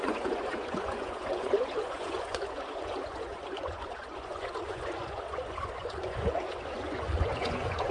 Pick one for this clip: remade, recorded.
remade